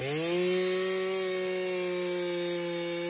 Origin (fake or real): real